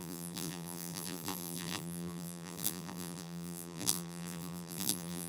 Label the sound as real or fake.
fake